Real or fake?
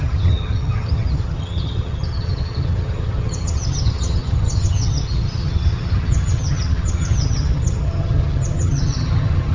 fake